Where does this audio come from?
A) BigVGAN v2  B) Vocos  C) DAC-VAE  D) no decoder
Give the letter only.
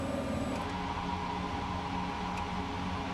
D